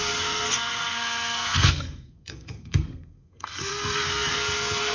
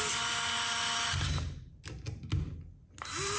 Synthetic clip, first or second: first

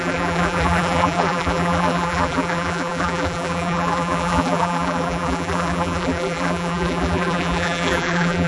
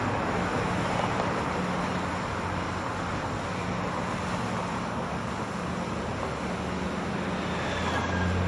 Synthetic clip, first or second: first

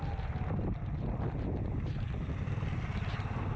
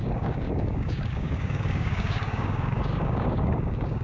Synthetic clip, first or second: second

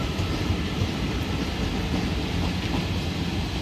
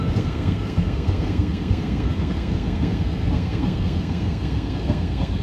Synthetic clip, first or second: second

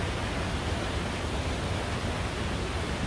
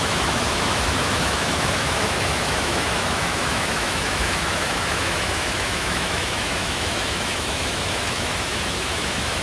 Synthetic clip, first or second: second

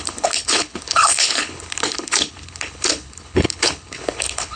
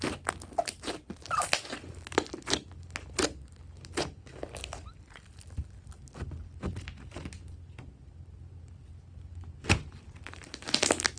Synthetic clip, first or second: first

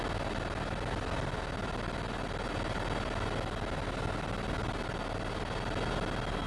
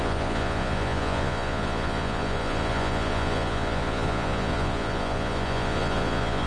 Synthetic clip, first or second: second